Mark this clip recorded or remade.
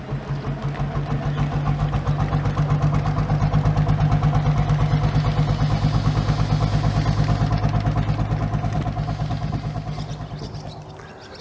recorded